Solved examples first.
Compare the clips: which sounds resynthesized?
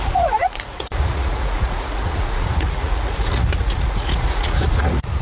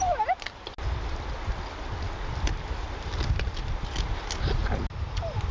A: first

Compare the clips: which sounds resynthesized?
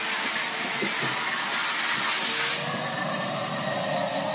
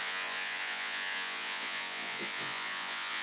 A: second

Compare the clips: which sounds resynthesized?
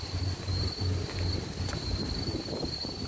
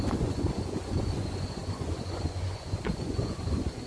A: second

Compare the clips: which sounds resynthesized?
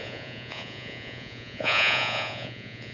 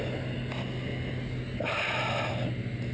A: first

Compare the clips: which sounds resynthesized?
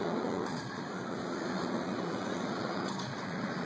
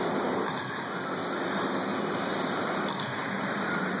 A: first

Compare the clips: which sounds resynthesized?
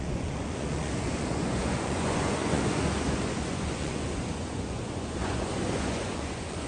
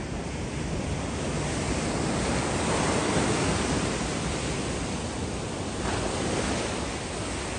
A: first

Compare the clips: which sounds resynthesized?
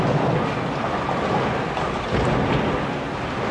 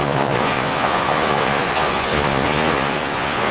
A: second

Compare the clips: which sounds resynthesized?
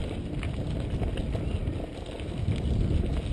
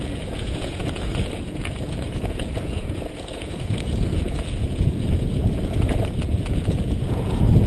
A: second